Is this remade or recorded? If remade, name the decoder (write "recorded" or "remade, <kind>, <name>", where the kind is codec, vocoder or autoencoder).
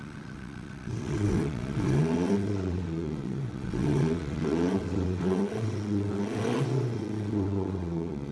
remade, vocoder, WaveNeXt